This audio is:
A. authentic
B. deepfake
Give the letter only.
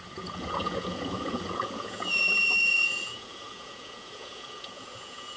B